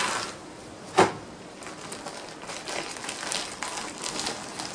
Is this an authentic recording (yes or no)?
yes